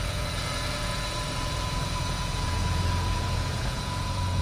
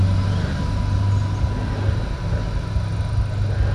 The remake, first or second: first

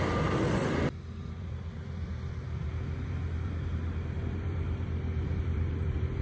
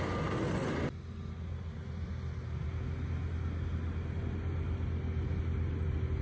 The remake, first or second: first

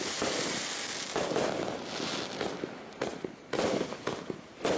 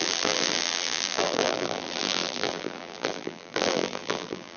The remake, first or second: second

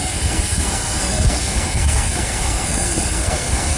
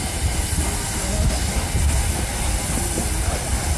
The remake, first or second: first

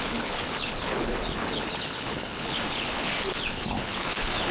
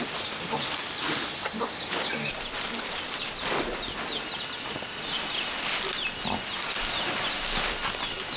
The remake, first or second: first